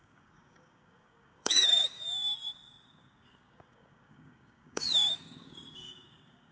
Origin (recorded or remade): remade